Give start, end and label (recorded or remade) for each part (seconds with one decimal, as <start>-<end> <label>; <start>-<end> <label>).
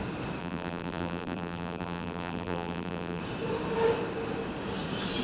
0.0-0.4 recorded; 0.4-3.2 remade; 3.2-5.2 recorded